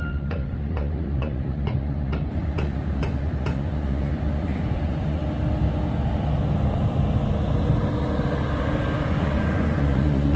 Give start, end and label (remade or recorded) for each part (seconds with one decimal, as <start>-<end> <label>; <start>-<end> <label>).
0.0-5.2 remade; 5.2-9.1 recorded; 9.1-10.4 remade